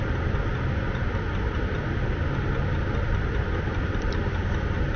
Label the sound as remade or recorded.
remade